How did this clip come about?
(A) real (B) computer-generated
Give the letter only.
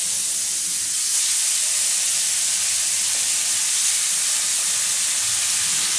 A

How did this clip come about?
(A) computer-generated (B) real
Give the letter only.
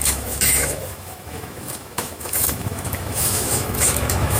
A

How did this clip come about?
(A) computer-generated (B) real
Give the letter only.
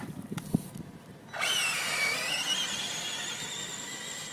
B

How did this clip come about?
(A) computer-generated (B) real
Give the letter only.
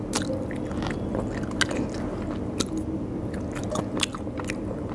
B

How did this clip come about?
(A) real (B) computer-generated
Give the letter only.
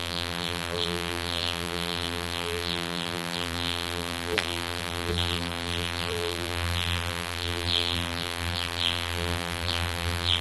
B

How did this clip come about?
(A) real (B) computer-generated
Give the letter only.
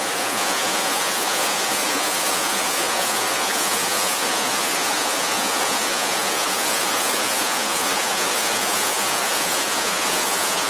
B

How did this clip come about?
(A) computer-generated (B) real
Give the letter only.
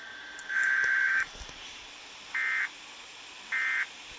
B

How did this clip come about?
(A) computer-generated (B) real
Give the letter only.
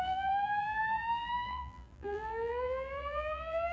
A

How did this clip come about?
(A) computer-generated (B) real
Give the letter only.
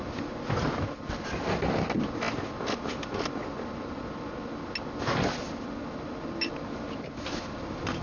B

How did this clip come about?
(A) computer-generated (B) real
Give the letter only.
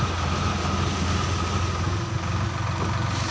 B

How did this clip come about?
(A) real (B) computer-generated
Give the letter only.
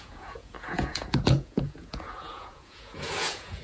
B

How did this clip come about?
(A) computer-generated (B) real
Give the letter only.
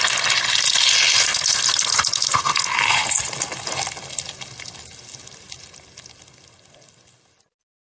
B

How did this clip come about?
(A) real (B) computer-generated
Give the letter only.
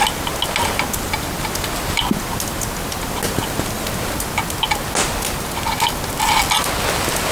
A